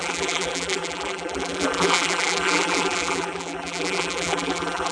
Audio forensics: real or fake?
fake